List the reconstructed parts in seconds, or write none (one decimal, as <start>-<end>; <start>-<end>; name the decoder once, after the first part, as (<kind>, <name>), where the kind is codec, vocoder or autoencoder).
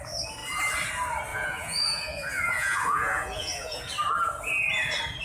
1.3-3.9 (vocoder, Vocos)